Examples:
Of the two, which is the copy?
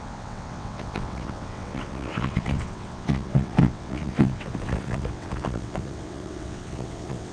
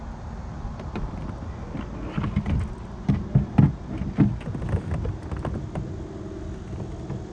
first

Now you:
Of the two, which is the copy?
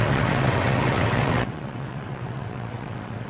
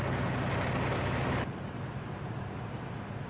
first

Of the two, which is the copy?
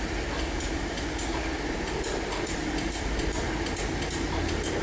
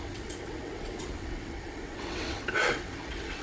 second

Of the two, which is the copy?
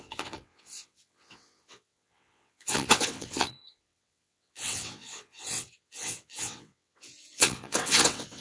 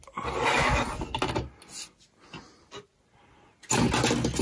first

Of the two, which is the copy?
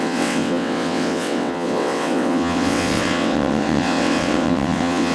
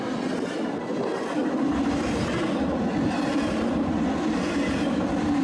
first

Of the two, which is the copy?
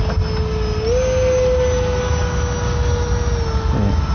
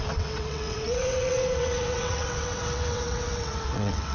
second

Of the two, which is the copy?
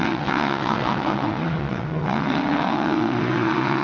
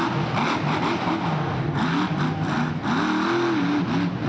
first